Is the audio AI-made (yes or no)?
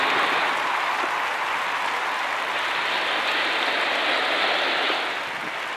no